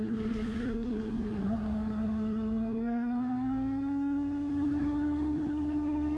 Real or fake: fake